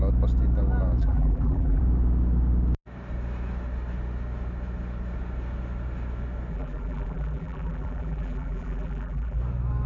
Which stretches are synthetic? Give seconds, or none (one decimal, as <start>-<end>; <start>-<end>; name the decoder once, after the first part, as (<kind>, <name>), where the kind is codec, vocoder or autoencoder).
1.0-1.8 (vocoder, BigVGAN v2); 6.5-9.4